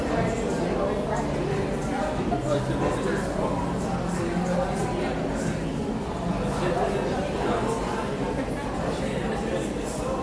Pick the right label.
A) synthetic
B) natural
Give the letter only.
B